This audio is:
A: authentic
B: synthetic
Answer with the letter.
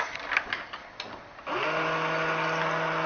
A